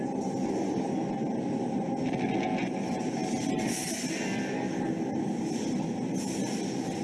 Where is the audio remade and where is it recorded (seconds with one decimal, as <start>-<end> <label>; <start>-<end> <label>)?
0.0-7.0 recorded